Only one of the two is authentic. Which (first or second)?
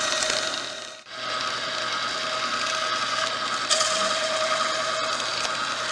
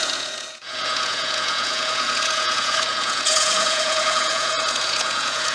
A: first